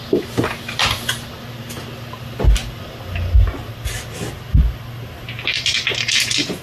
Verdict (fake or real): real